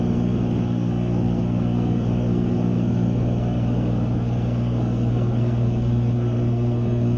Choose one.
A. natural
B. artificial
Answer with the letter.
B